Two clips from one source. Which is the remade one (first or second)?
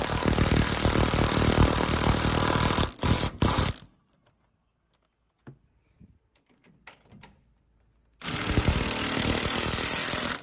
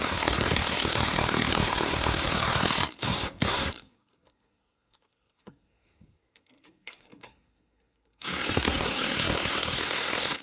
second